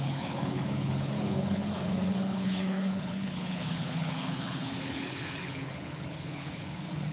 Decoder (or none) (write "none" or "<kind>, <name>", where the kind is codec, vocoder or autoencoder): codec, HILCodec